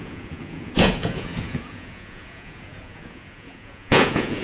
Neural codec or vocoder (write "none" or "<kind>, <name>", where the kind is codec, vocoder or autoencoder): vocoder, Vocos